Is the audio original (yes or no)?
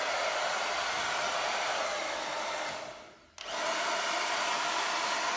yes